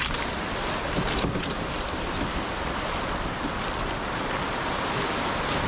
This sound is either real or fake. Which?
real